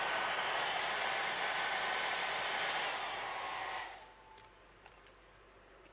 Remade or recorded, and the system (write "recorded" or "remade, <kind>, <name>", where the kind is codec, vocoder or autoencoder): recorded